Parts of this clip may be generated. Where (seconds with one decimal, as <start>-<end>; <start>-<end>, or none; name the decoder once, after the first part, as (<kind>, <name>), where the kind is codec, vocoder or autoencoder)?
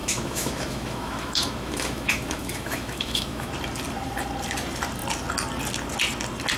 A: 0.0-3.5 (autoencoder, DAC-VAE)